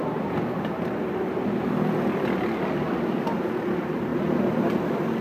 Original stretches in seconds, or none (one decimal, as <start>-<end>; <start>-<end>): 0.0-5.2